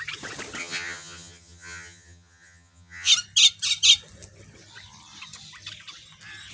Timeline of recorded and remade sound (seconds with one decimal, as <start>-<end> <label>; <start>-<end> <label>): 0.0-0.6 recorded; 0.6-3.1 remade; 3.1-6.5 recorded